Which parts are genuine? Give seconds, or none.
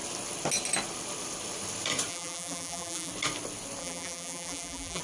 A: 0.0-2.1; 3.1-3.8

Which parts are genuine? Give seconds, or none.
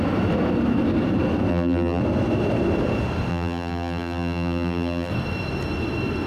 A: 0.0-1.5; 2.0-3.3; 5.1-6.3